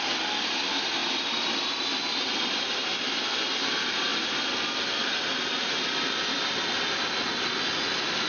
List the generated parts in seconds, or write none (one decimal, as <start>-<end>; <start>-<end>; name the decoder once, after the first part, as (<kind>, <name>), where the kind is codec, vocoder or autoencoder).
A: none